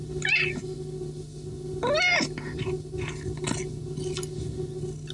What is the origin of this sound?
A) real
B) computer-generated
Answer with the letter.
A